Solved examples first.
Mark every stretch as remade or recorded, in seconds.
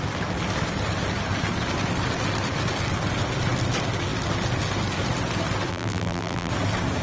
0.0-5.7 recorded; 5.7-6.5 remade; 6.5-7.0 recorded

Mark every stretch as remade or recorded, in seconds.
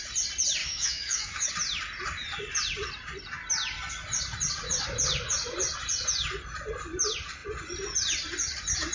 0.0-0.6 recorded; 0.6-1.5 remade; 1.5-8.9 recorded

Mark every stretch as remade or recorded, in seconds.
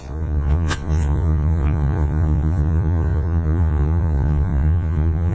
0.0-5.3 remade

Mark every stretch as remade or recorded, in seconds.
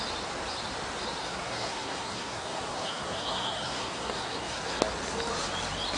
0.0-1.2 recorded; 1.2-4.8 remade; 4.8-6.0 recorded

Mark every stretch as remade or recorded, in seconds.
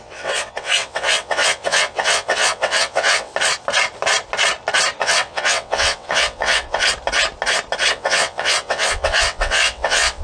0.0-3.3 remade; 3.3-5.0 recorded; 5.0-6.8 remade; 6.8-7.9 recorded; 7.9-10.2 remade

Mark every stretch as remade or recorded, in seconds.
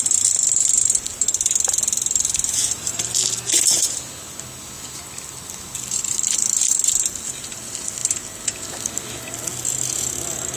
0.0-10.6 recorded